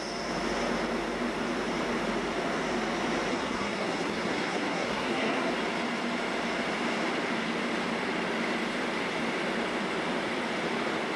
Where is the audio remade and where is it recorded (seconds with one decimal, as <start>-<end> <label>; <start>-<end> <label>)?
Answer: 0.0-3.3 recorded; 3.3-5.5 remade; 5.5-11.2 recorded